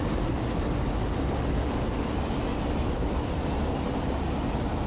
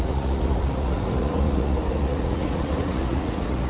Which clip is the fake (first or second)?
second